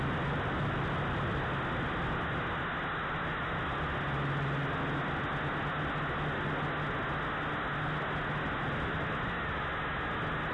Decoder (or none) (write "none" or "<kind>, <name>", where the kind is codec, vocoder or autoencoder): none